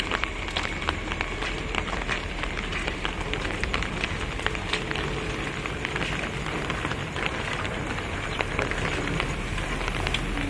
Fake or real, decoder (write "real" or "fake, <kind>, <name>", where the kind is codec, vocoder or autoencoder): real